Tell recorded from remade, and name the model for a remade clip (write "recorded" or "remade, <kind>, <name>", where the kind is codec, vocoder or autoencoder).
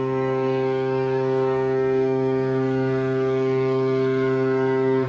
remade, codec, SNAC